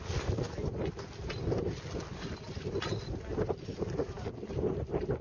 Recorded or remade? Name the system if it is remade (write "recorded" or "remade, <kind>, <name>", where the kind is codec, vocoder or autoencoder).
recorded